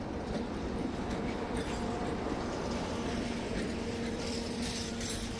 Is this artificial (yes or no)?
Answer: yes